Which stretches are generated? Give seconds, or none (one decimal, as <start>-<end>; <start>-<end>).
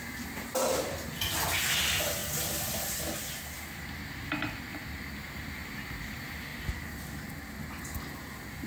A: none